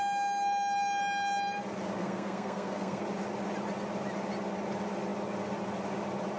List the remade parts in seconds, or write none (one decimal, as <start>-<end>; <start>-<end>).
2.0-3.0